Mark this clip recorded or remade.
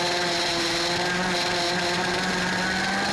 recorded